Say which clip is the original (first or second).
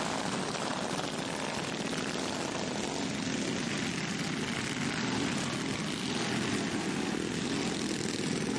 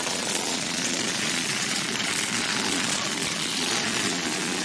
first